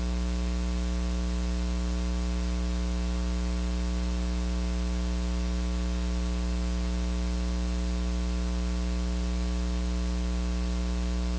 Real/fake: real